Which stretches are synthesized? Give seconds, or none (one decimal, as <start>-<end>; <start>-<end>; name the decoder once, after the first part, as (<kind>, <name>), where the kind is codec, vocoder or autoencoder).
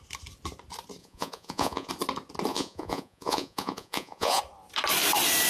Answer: 1.0-1.9 (vocoder, Vocos); 2.5-4.4